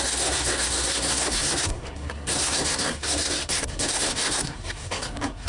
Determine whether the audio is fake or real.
fake